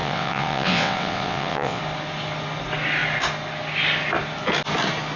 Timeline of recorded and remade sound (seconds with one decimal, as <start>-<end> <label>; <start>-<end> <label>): 0.0-1.8 remade; 1.8-5.2 recorded

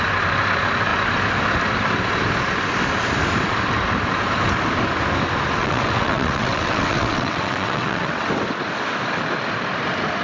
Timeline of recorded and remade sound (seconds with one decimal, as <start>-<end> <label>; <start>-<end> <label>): 0.0-5.6 recorded; 5.6-8.3 remade; 8.3-10.2 recorded

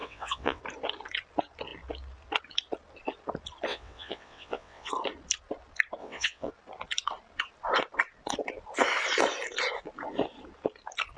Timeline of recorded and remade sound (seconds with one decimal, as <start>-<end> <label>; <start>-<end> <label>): 0.0-0.6 remade; 0.6-3.7 recorded; 3.7-4.9 remade; 4.9-6.0 recorded; 6.0-6.5 remade; 6.5-11.2 recorded